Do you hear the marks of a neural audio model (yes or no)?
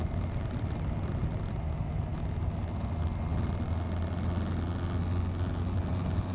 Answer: no